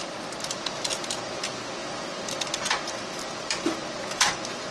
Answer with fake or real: real